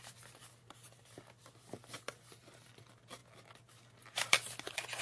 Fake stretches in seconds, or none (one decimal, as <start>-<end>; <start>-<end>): none